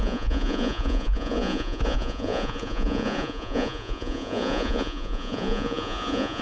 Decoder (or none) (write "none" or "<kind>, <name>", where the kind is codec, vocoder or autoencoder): vocoder, Vocos